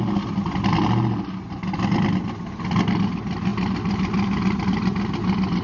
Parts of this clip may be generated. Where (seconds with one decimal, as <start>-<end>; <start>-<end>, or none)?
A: 0.0-3.5; 4.6-5.6

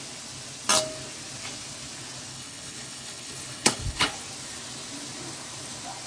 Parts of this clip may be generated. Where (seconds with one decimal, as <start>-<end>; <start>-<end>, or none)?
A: 2.3-4.1

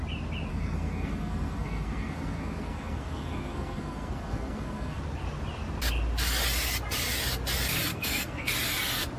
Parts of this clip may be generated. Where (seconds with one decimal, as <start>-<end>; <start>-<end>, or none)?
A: 0.5-5.0; 7.9-8.5

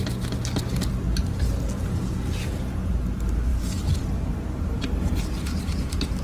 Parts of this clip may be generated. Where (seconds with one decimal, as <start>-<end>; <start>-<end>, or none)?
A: 3.5-5.1

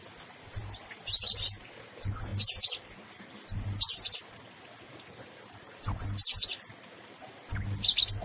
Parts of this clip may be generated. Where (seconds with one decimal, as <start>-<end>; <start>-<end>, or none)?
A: none

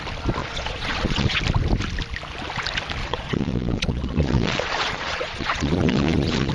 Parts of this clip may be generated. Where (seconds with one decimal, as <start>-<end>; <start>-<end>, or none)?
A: 0.4-1.4; 3.0-6.5